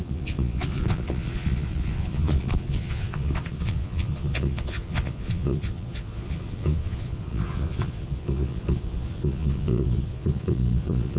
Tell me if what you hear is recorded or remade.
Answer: remade